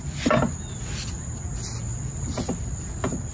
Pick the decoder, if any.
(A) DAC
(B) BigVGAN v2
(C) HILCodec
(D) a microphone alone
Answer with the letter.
D